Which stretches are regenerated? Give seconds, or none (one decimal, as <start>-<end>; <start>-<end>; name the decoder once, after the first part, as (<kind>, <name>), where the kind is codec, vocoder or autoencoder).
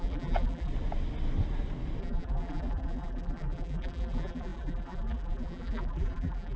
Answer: 0.0-0.7 (vocoder, BigVGAN v2); 2.0-6.6